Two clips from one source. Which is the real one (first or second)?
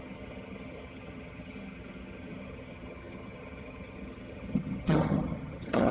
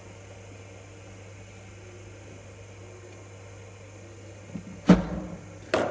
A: second